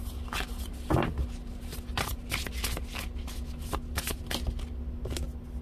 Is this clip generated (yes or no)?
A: no